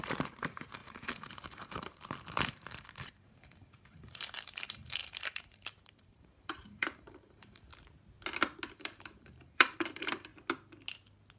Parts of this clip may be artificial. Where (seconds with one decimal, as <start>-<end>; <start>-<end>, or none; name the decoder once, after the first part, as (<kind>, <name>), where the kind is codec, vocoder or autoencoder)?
0.0-7.7 (vocoder, BigVGAN v2); 8.7-10.3